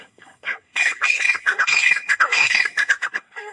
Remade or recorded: remade